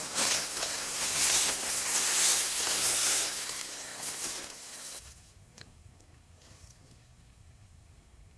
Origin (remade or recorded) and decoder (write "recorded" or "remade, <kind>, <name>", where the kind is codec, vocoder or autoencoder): remade, codec, SNAC